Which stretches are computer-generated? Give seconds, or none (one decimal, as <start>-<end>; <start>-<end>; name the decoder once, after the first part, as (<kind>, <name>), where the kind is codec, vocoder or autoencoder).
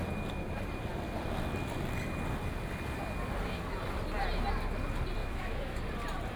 5.2-5.8 (autoencoder, DAC-VAE)